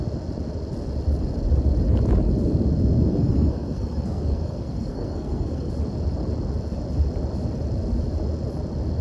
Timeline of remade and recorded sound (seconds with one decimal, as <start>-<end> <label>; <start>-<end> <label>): 0.0-3.1 recorded; 3.1-5.7 remade; 5.7-9.0 recorded